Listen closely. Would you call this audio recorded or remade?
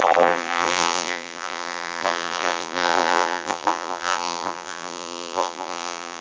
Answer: remade